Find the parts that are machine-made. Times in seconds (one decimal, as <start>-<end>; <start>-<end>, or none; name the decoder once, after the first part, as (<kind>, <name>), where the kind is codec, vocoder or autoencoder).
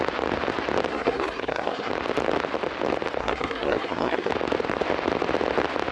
0.9-1.9 (codec, SNAC); 3.2-4.3